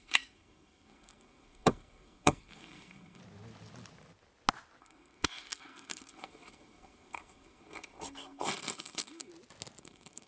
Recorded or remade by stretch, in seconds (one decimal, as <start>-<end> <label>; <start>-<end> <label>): 0.0-3.2 remade; 3.2-4.8 recorded; 4.8-9.3 remade; 9.3-9.8 recorded; 9.8-10.3 remade